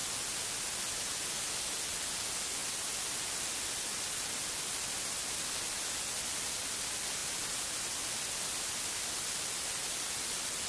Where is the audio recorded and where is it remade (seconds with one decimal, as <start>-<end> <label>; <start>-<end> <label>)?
0.0-10.7 recorded